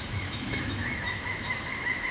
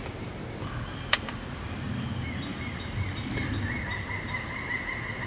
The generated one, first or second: first